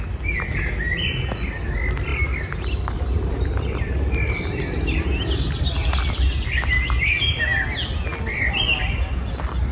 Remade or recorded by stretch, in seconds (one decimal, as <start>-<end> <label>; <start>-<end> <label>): 0.0-9.7 recorded